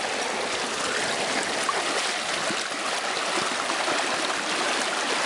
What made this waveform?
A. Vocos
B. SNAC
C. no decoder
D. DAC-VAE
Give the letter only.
C